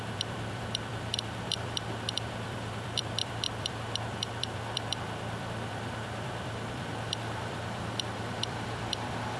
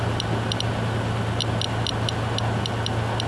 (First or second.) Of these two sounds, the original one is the second